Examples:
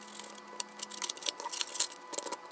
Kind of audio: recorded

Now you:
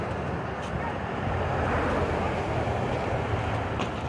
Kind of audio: recorded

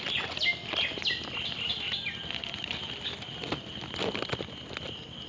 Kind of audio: recorded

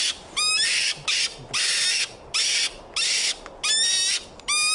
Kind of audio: recorded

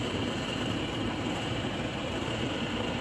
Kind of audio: remade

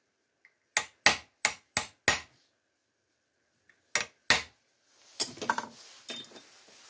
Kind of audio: recorded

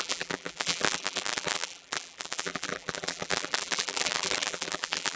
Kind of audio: remade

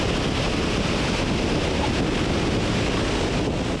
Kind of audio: recorded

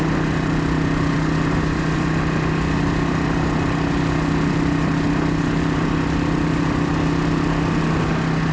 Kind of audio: recorded